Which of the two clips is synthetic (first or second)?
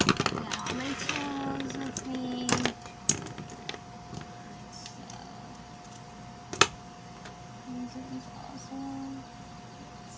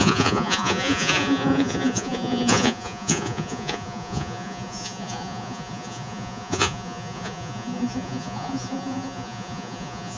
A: second